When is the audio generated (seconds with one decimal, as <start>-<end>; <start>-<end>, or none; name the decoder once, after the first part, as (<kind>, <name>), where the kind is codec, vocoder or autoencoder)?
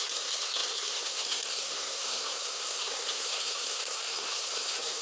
0.0-5.0 (codec, SNAC)